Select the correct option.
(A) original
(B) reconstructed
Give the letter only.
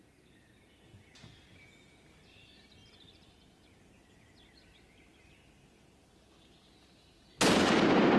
A